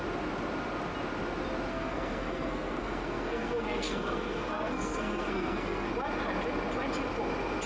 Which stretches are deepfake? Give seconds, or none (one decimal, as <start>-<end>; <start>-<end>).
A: 1.7-5.9